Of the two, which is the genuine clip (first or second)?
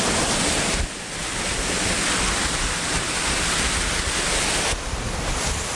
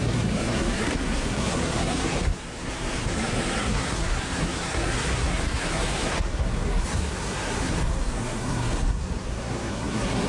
first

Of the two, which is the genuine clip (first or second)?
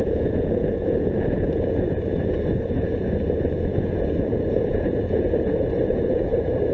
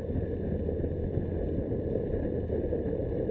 second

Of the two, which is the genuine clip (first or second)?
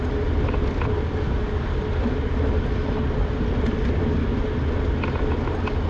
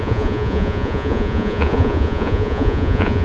first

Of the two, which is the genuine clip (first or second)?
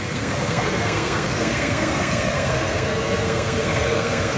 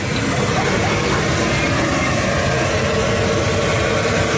second